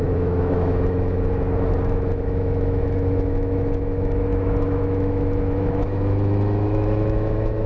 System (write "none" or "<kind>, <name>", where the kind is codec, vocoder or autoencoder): autoencoder, DAC-VAE